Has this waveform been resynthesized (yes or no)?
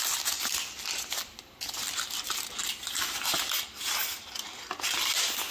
no